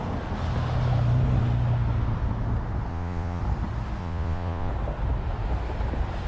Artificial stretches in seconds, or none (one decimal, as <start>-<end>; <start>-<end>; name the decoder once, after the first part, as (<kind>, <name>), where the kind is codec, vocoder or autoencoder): 2.9-3.4 (vocoder, Vocos); 4.0-4.7